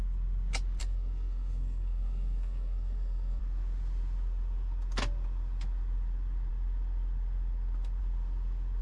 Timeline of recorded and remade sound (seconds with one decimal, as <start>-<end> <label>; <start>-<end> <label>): 0.0-0.8 recorded; 0.8-3.4 remade; 3.4-8.8 recorded